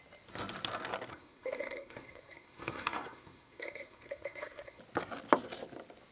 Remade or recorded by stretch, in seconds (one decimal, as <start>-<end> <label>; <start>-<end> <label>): 0.0-1.1 recorded; 1.1-4.8 remade; 4.8-6.1 recorded